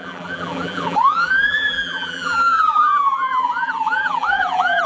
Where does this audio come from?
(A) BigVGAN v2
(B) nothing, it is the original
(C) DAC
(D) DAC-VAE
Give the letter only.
A